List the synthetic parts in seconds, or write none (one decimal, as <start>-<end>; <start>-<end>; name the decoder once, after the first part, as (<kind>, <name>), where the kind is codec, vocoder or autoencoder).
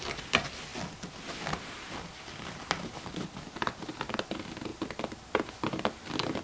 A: none